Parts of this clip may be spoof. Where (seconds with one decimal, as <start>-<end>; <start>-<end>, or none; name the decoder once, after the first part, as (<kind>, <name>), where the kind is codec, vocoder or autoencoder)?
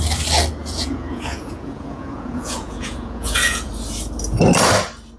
0.6-3.7 (vocoder, Vocos)